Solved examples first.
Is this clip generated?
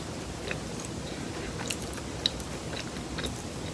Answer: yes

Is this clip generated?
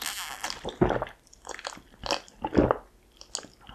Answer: no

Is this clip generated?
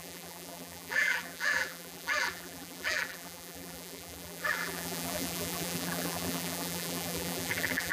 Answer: yes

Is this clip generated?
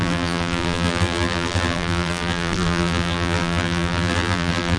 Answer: yes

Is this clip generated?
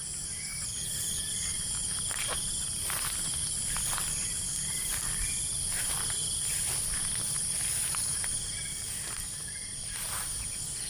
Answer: yes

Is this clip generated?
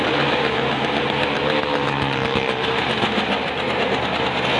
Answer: no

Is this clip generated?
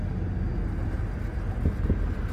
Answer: no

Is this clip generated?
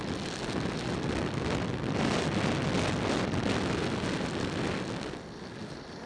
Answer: no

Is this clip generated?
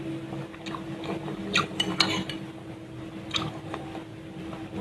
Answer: no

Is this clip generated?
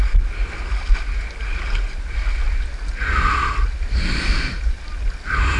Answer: no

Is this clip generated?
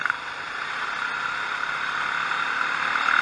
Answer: no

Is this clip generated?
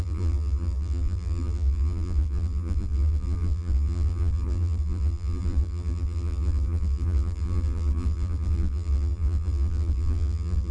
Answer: yes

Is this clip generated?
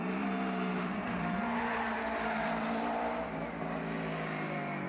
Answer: no